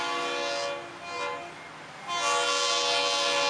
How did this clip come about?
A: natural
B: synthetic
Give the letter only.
A